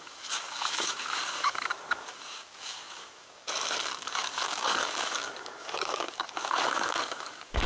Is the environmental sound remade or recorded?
remade